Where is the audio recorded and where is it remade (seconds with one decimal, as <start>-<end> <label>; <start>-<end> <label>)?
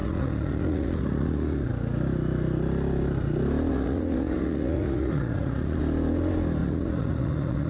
0.0-1.7 remade; 1.7-3.7 recorded; 3.7-5.8 remade; 5.8-6.6 recorded; 6.6-7.7 remade